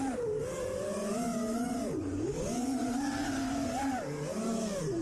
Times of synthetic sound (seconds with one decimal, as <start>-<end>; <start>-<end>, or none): 0.0-5.0